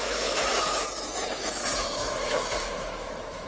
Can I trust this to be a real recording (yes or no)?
no